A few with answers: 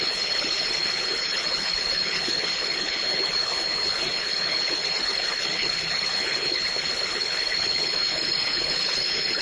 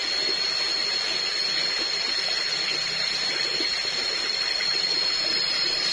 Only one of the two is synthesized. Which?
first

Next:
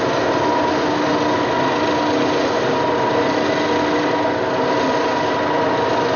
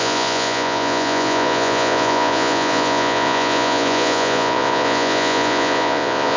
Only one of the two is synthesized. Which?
second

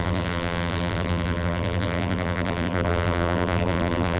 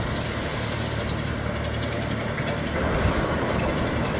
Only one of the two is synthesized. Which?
first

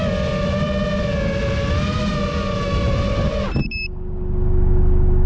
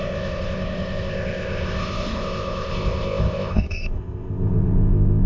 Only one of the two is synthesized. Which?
second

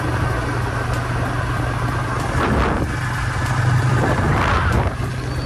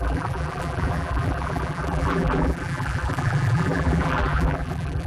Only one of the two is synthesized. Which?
second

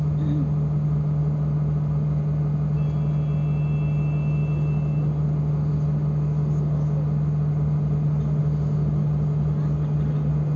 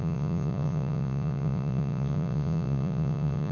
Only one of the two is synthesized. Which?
second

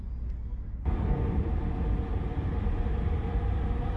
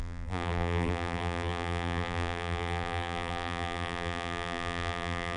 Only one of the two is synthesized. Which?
second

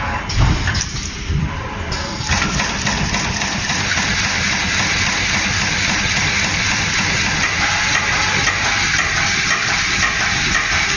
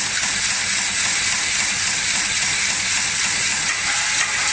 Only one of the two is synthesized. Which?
first